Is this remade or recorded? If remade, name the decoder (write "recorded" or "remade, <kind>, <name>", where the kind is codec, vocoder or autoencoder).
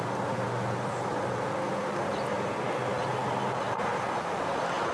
recorded